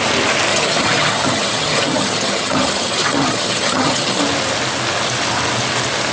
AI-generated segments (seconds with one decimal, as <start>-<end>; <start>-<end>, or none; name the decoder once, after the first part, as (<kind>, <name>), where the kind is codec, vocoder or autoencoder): 0.5-4.2 (vocoder, HiFi-GAN)